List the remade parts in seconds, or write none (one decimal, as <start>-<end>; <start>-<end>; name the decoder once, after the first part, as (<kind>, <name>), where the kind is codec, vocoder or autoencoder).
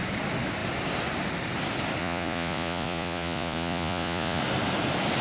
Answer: 2.0-4.4 (vocoder, Vocos)